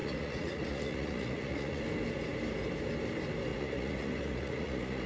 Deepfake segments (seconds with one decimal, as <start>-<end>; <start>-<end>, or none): 0.0-1.8; 3.5-5.1